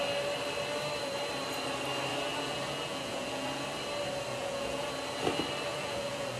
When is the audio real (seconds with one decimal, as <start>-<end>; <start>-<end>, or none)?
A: 0.0-2.1; 3.6-4.3; 4.9-5.7